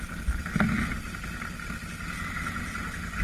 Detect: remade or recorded recorded